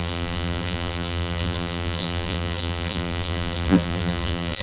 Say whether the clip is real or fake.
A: fake